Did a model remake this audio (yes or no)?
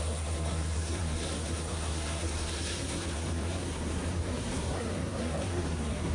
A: yes